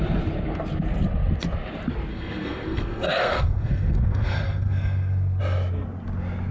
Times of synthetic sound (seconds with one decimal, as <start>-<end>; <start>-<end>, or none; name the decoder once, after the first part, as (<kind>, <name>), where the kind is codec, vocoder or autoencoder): 2.1-5.4 (codec, SNAC)